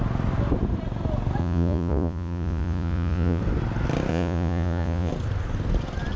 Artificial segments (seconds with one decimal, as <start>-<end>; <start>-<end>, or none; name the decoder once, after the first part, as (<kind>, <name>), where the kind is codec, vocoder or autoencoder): 1.4-3.4 (vocoder, Vocos); 4.1-5.1